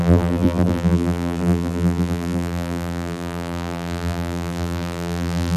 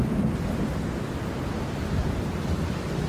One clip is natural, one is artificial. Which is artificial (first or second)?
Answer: first